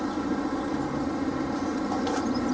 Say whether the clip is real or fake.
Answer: real